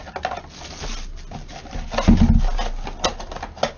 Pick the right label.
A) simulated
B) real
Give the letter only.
B